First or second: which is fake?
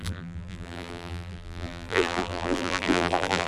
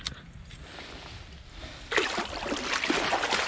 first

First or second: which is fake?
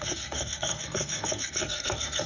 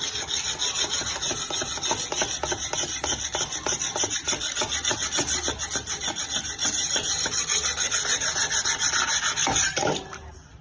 first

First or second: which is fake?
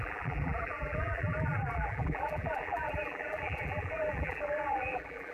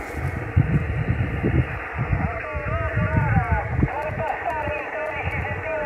first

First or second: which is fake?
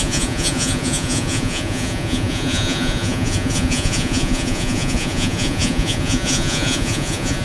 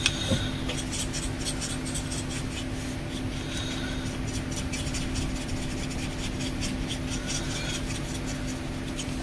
first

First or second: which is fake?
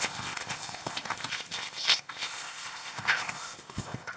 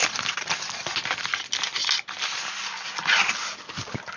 first